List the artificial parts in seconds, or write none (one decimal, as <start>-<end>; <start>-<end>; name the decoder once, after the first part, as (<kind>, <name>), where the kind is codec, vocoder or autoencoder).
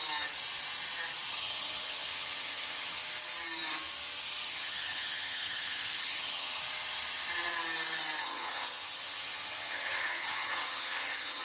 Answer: 1.3-3.0 (vocoder, HiFi-GAN); 4.5-6.6; 8.2-11.4